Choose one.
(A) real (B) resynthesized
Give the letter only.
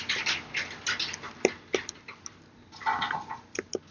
A